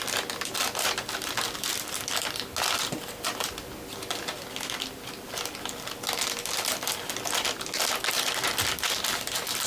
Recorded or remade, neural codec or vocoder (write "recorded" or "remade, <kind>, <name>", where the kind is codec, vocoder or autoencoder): recorded